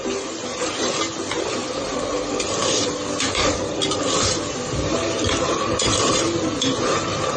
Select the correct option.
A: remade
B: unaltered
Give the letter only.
B